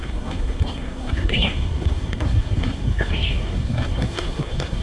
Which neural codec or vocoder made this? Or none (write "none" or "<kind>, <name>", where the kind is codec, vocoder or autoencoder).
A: codec, SNAC